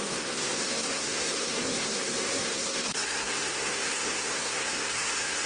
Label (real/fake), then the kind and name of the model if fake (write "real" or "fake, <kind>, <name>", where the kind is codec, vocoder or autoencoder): fake, codec, SNAC